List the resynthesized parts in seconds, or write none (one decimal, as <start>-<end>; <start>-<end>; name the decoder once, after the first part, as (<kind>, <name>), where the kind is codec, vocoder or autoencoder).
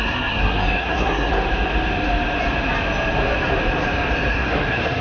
0.0-1.3 (codec, SNAC); 4.3-5.0